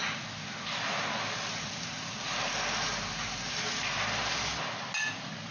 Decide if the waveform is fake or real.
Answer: real